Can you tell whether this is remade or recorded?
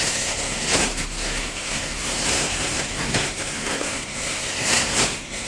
remade